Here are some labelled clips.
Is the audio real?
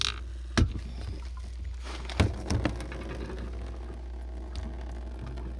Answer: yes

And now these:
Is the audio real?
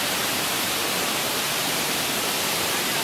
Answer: no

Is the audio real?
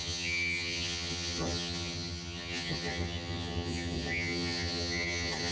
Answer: no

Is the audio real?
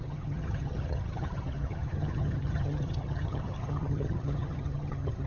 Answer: no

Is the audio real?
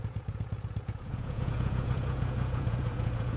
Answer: no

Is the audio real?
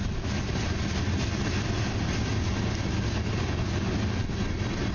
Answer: yes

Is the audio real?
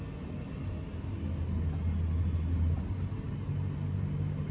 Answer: yes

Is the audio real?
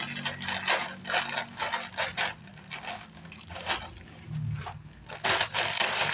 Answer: yes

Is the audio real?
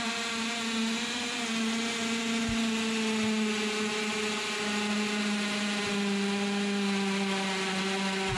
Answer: yes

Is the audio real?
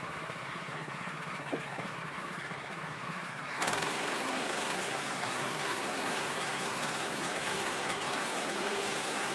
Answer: no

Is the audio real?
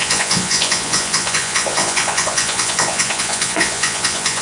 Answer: no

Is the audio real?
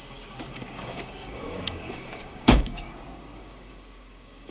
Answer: no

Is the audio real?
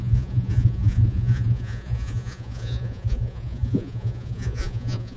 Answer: no